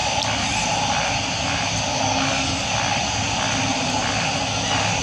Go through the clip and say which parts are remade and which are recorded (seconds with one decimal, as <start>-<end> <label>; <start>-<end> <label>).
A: 0.0-1.9 recorded; 1.9-2.7 remade; 2.7-5.0 recorded